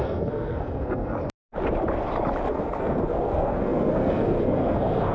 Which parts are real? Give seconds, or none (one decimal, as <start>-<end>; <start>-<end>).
1.2-2.5